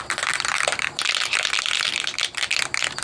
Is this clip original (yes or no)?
no